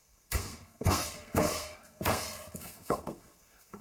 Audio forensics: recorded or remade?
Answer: remade